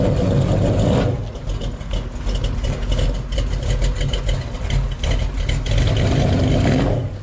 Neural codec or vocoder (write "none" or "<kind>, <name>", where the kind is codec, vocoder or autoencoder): none